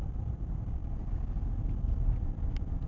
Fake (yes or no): no